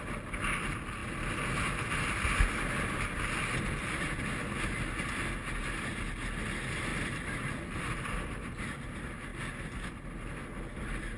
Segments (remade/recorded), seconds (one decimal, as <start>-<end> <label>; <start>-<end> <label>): 0.0-6.9 recorded; 6.9-8.0 remade; 8.0-11.2 recorded